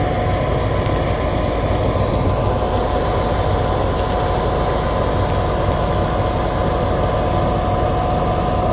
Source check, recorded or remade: recorded